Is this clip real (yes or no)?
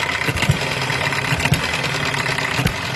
yes